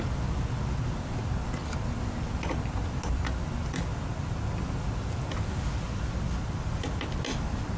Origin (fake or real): real